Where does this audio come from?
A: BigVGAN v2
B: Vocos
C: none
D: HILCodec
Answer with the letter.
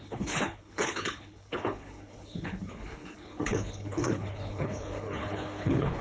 D